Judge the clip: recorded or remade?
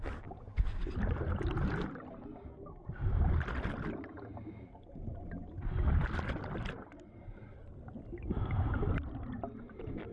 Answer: recorded